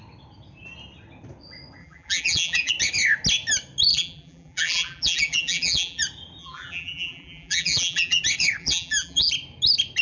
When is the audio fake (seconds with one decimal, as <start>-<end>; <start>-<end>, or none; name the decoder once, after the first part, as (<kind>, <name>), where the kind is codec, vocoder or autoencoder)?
1.8-2.7 (vocoder, BigVGAN v2); 3.9-6.0; 6.4-8.2; 8.6-9.3